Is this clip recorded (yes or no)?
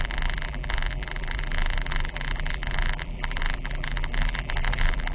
no